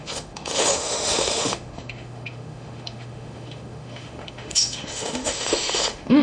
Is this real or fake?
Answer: fake